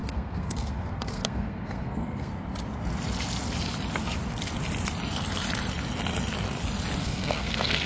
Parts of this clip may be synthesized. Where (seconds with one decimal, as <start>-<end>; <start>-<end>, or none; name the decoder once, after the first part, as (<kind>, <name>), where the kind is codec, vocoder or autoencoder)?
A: 0.0-2.3 (codec, SNAC); 7.0-7.9